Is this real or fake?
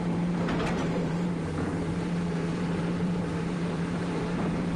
fake